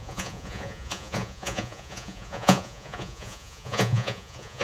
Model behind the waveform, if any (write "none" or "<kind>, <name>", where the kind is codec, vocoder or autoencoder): vocoder, Vocos